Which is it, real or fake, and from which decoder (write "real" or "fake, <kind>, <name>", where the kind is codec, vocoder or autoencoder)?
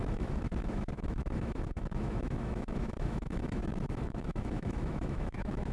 fake, autoencoder, DAC-VAE